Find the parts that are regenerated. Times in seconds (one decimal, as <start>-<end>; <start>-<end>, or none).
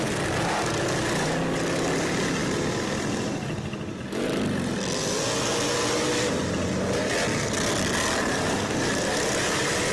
none